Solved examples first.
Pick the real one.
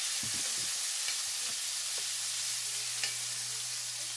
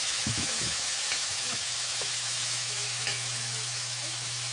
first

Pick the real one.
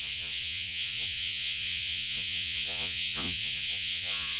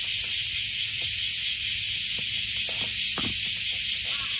second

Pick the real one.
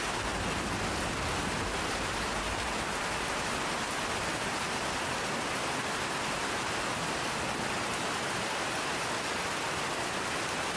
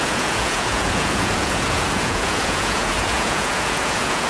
first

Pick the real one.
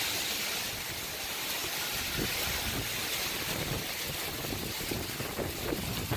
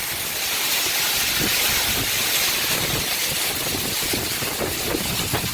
first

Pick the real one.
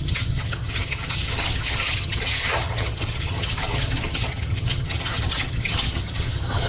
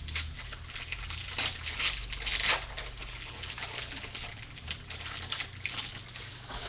second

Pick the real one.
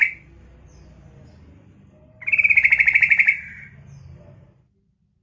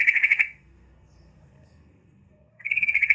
first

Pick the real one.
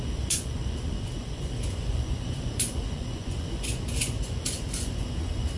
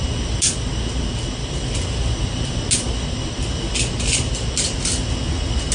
second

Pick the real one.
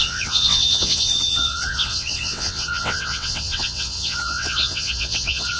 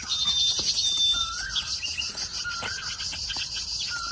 second